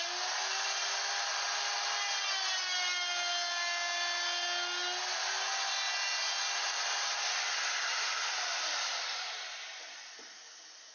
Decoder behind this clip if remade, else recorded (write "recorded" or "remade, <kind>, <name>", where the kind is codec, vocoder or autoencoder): recorded